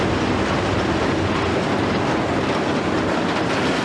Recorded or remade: recorded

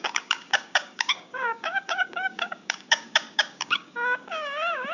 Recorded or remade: remade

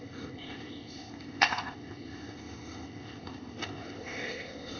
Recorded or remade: remade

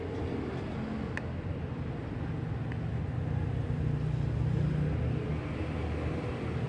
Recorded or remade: recorded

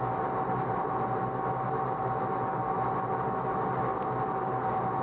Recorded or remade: recorded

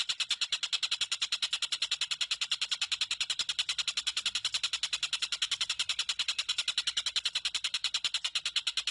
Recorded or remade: recorded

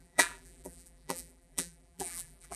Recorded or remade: remade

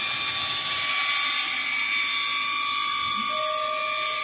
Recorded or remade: recorded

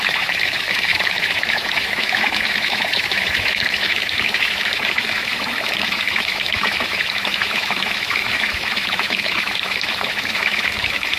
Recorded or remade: remade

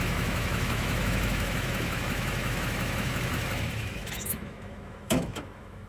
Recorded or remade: remade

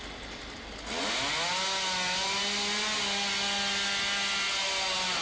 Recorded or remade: recorded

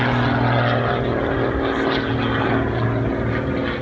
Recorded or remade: recorded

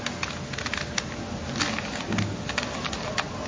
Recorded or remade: recorded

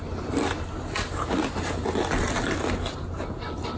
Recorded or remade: recorded